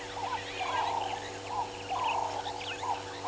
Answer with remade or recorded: recorded